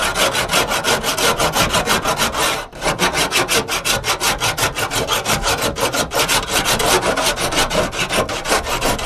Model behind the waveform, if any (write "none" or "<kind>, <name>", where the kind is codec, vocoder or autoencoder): none